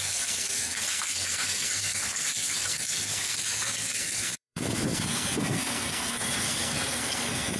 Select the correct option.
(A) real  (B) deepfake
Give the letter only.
B